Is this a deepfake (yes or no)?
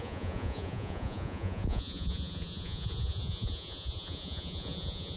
yes